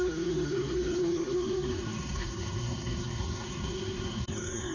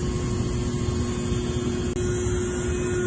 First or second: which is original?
second